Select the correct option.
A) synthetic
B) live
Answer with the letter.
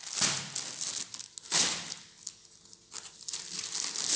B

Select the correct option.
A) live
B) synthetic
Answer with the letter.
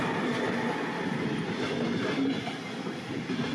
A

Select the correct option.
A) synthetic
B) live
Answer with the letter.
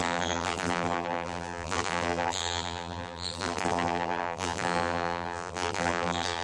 A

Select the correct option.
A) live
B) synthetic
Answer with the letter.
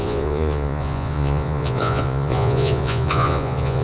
B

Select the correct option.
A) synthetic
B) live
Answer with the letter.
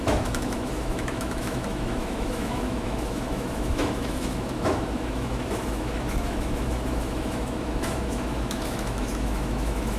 A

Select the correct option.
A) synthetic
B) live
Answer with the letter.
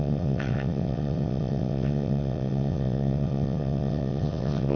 A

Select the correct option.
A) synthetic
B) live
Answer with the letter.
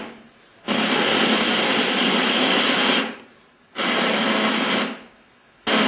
B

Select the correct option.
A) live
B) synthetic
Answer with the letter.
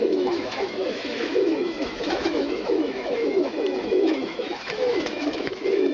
B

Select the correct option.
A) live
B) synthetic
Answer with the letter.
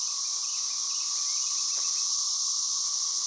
A